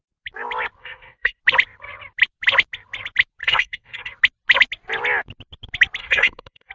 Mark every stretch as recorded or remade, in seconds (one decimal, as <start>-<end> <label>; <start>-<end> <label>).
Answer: 0.0-0.8 recorded; 0.8-1.4 remade; 1.4-3.4 recorded; 3.4-4.1 remade; 4.1-6.0 recorded; 6.0-6.7 remade